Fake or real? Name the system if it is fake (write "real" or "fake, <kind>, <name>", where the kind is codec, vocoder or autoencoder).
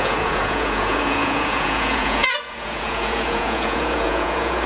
fake, vocoder, Vocos